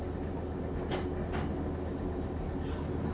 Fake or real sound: real